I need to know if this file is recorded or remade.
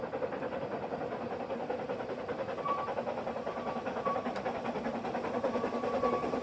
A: recorded